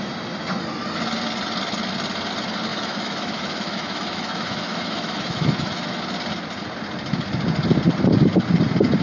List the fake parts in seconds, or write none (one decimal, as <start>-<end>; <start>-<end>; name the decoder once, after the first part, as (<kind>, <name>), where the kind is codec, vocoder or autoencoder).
2.7-6.0 (autoencoder, DAC-VAE)